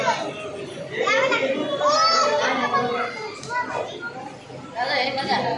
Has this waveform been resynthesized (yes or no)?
no